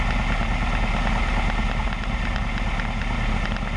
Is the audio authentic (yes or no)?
yes